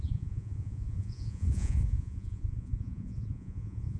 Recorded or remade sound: remade